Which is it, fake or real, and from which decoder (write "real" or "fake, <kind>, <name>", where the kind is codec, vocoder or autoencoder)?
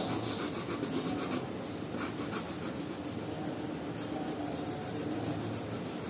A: real